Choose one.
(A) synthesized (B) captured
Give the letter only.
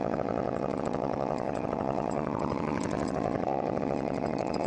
A